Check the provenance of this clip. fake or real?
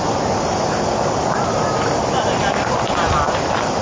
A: real